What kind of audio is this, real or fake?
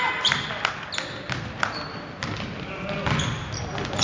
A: real